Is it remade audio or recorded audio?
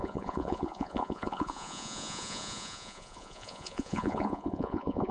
remade